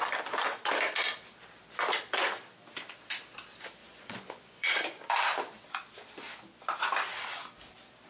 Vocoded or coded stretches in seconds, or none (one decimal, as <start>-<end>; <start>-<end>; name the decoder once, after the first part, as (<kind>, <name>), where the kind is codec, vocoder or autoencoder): 3.8-4.7 (vocoder, Vocos)